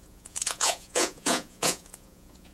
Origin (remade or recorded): remade